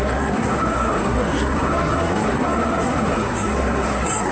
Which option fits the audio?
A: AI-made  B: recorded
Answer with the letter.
A